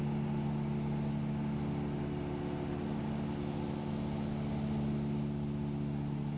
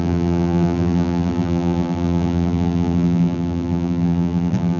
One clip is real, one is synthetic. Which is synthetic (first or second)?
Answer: second